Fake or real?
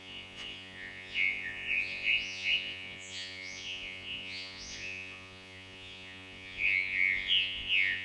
fake